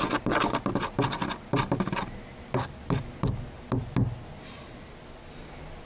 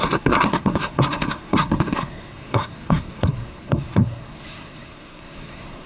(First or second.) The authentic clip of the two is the first